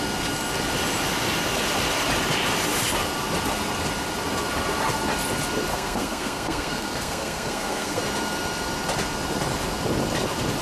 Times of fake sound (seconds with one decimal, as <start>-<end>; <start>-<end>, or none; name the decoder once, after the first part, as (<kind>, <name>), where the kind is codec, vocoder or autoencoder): 5.7-8.0 (codec, SNAC)